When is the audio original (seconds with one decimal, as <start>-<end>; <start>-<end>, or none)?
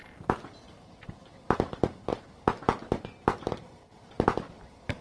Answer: 2.1-2.9